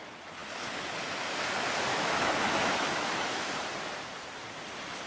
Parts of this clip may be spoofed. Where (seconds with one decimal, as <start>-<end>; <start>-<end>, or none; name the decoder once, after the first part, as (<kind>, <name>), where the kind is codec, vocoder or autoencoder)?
1.9-3.5 (autoencoder, DAC-VAE)